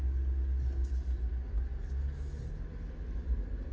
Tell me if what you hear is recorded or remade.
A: recorded